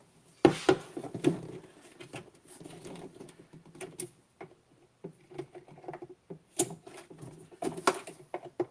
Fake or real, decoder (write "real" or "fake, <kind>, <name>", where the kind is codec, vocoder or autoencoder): real